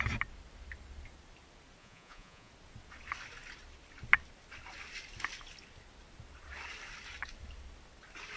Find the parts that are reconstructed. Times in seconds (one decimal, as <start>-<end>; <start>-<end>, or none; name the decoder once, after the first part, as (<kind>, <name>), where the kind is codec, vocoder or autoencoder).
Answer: 1.8-2.5 (vocoder, Vocos)